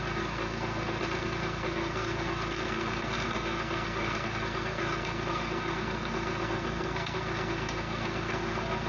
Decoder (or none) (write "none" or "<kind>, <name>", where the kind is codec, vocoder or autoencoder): codec, SNAC